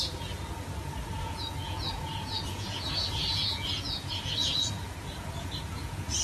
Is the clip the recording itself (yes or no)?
no